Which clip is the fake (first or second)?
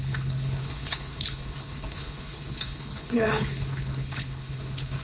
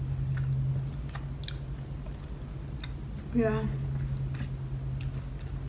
first